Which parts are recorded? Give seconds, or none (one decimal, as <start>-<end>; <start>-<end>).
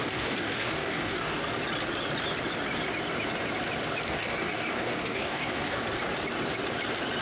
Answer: 1.4-4.1; 5.8-7.2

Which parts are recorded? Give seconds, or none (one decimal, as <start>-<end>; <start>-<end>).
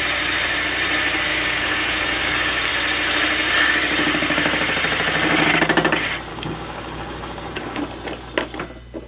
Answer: 0.0-1.3; 2.7-6.3; 7.8-9.1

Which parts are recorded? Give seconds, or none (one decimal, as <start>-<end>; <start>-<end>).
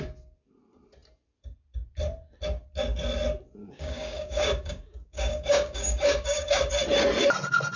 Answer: 0.0-3.6; 6.7-7.8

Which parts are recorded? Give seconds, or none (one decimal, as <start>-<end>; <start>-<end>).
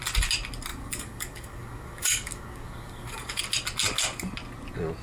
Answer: 0.0-0.7; 3.4-5.0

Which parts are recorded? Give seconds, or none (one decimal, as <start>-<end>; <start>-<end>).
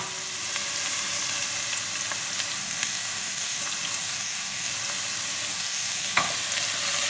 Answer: 0.0-2.6; 3.6-4.0; 4.7-5.5; 6.3-7.1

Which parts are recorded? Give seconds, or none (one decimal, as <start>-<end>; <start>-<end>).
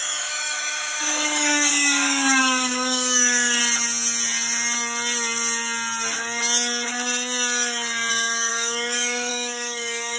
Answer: 3.6-8.1